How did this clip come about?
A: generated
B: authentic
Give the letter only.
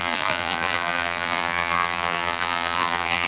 A